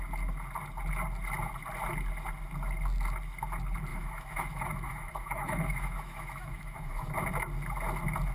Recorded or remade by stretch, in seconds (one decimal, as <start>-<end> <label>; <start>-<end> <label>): 0.0-3.9 recorded; 3.9-7.1 remade; 7.1-8.3 recorded